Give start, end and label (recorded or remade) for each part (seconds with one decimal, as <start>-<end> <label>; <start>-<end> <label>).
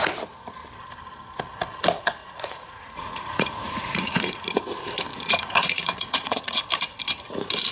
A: 0.0-2.2 recorded; 2.2-4.5 remade; 4.5-5.1 recorded; 5.1-6.6 remade; 6.6-7.7 recorded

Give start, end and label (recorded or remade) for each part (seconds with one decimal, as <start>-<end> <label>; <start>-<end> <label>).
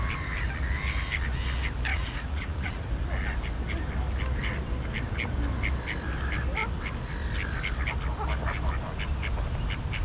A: 0.0-1.9 recorded; 1.9-2.9 remade; 2.9-10.0 recorded